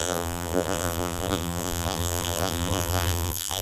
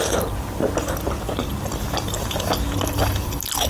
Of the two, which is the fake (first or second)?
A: first